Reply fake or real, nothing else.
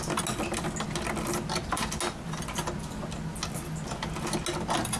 real